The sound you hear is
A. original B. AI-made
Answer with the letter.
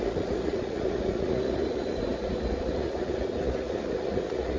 B